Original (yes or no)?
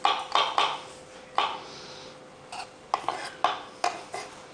yes